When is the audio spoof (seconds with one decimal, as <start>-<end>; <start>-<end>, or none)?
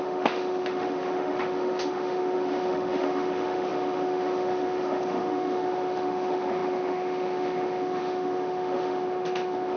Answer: 0.0-9.8